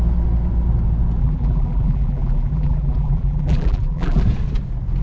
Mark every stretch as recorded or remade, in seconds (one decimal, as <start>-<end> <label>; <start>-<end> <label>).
0.0-1.2 recorded; 1.2-4.2 remade; 4.2-5.0 recorded